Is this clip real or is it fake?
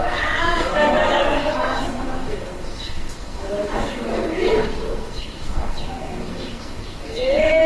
fake